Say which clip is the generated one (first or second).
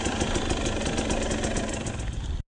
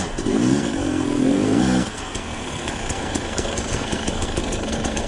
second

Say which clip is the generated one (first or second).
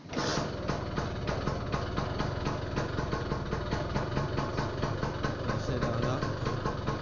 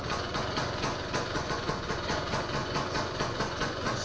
second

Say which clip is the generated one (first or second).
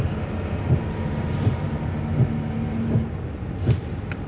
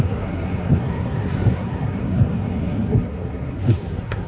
second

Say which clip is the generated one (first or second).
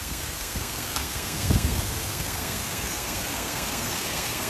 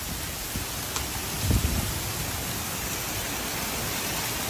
first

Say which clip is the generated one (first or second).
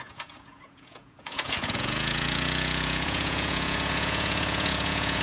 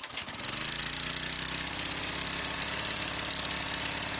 first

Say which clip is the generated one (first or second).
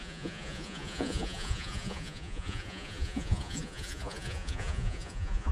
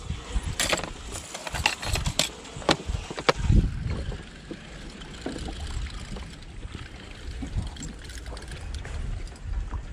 first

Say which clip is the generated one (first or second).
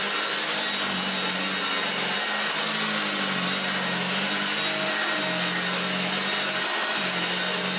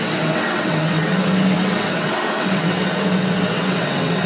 second